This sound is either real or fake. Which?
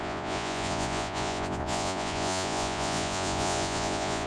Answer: fake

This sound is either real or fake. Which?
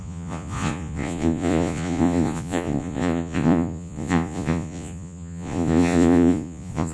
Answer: fake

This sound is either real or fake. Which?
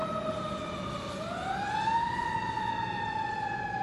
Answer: real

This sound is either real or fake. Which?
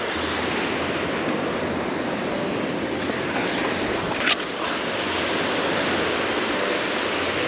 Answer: real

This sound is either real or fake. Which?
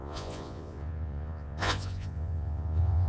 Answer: fake